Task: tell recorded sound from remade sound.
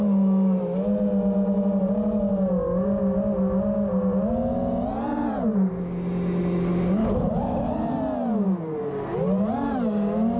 recorded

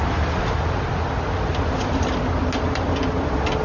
recorded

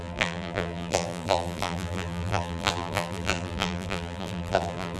remade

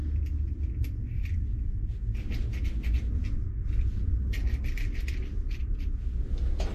recorded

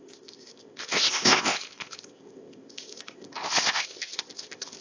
remade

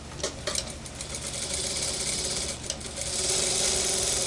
recorded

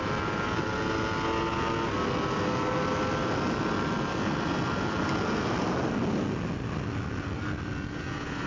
recorded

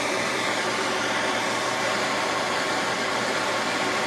remade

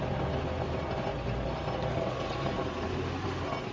recorded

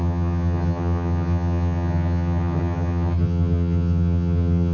remade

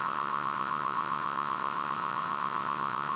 remade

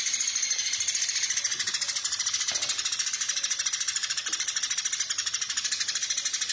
recorded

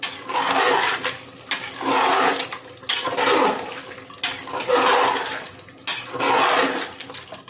recorded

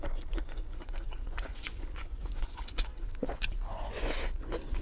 remade